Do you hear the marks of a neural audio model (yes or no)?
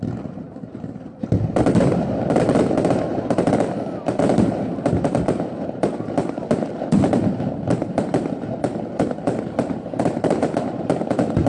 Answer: yes